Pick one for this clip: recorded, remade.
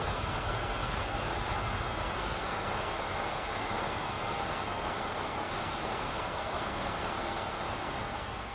remade